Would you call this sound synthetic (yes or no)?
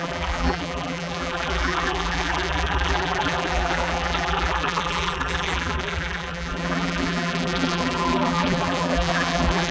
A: yes